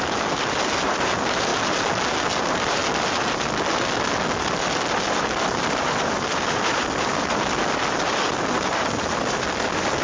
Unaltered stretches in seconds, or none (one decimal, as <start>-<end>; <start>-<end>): 1.5-2.4; 2.8-4.6